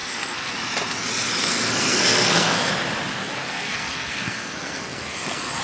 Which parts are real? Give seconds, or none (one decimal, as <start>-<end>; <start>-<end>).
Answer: 0.5-1.4; 2.7-3.2